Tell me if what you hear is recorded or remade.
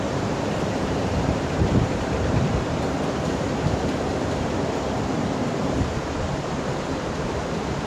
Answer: remade